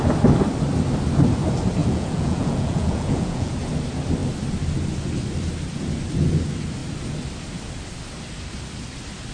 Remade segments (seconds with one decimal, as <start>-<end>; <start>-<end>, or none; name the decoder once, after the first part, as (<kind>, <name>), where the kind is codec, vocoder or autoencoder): 1.8-3.5 (vocoder, Vocos)